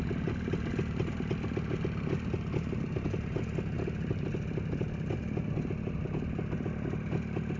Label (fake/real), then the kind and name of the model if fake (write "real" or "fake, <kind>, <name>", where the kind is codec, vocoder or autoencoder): real